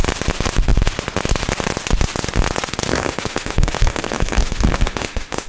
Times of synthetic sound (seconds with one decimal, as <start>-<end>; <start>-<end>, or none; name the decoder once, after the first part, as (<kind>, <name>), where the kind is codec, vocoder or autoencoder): 2.9-5.5 (autoencoder, DAC-VAE)